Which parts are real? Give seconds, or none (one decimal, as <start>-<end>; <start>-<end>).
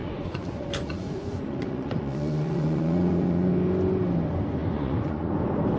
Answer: 3.5-4.6; 5.3-5.8